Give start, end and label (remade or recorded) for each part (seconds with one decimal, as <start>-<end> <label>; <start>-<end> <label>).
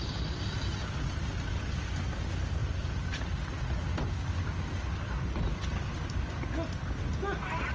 0.0-7.7 recorded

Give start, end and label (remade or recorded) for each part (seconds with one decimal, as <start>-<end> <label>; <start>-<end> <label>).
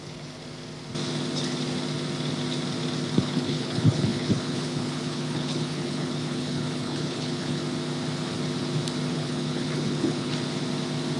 0.0-0.4 remade; 0.4-3.2 recorded; 3.2-7.6 remade; 7.6-9.1 recorded; 9.1-10.3 remade; 10.3-11.2 recorded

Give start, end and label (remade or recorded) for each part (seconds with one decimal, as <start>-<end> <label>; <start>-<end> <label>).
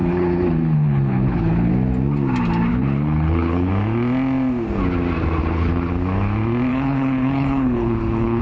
0.0-1.7 remade; 1.7-2.7 recorded; 2.7-3.7 remade; 3.7-5.4 recorded; 5.4-5.9 remade; 5.9-6.7 recorded; 6.7-8.4 remade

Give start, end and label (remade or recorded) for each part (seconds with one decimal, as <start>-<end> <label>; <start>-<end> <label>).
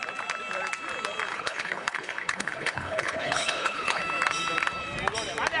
0.0-1.3 recorded; 1.3-4.0 remade; 4.0-5.6 recorded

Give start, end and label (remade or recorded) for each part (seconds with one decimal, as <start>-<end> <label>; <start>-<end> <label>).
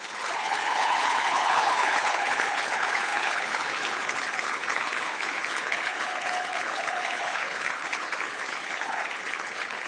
0.0-9.9 remade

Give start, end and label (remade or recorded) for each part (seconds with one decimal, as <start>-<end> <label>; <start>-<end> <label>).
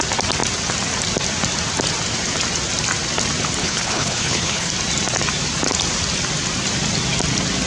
0.0-3.6 recorded; 3.6-4.7 remade; 4.7-7.7 recorded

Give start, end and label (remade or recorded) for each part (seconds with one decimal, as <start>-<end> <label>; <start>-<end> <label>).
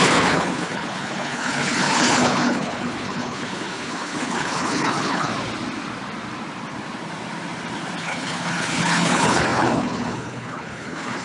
0.0-5.3 remade; 5.3-8.0 recorded; 8.0-11.2 remade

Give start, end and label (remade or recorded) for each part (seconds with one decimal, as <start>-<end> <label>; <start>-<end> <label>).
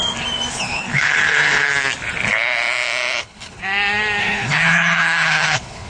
0.0-0.5 recorded; 0.5-1.7 remade; 1.7-3.2 recorded; 3.2-3.6 remade; 3.6-4.2 recorded; 4.2-5.9 remade